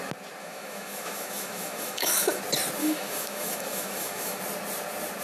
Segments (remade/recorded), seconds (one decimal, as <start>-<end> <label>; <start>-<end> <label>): 0.0-0.4 recorded; 0.4-2.4 remade; 2.4-2.8 recorded; 2.8-4.4 remade; 4.4-5.2 recorded